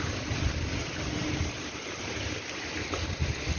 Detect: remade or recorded recorded